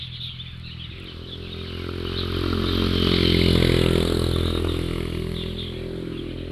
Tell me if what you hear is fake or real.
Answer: real